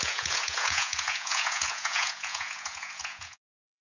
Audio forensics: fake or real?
fake